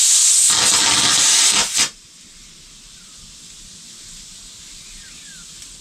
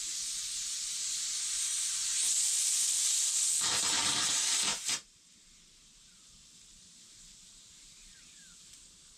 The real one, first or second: first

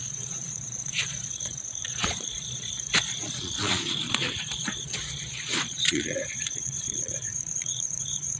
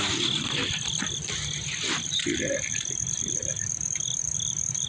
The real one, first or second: second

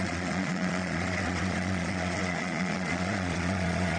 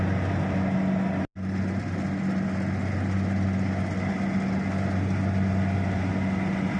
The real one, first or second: second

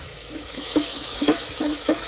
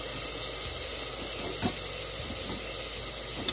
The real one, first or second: second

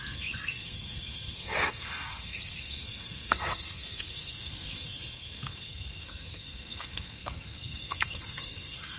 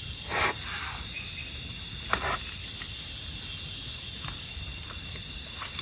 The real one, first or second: second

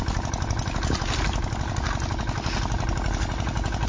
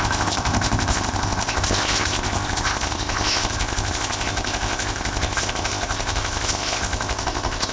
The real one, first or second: first